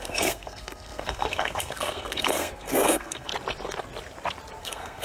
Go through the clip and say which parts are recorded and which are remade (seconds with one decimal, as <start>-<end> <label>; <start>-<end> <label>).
0.0-3.3 remade; 3.3-4.6 recorded; 4.6-5.0 remade